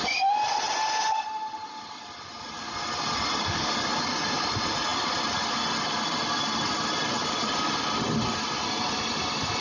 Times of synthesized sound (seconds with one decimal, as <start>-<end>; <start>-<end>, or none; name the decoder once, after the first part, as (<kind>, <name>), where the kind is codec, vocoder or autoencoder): none